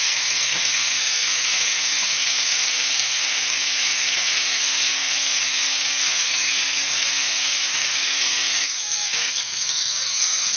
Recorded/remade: remade